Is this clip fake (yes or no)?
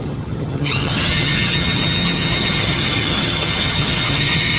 yes